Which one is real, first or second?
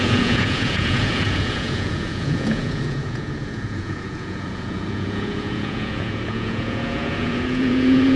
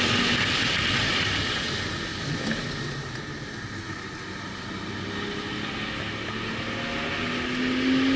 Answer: second